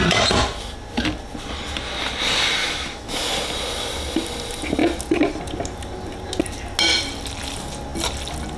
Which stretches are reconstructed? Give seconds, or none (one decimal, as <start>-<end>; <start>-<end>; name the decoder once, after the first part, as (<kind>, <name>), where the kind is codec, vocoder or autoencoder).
2.6-3.3 (autoencoder, DAC-VAE)